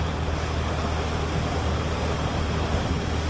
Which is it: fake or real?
real